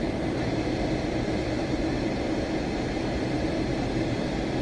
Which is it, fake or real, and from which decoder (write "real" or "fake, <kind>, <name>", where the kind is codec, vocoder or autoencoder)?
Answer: real